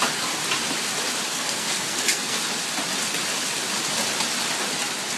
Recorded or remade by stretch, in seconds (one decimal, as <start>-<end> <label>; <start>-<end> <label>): 0.0-1.3 recorded; 1.3-2.4 remade; 2.4-5.2 recorded